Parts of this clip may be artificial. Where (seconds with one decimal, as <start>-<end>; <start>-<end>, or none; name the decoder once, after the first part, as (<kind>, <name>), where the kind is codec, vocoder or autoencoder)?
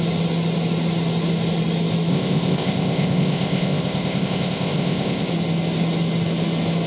2.1-5.3 (codec, ZipCodec)